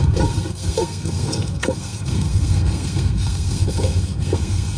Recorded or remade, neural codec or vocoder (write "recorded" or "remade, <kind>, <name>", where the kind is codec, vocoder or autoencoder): remade, codec, SNAC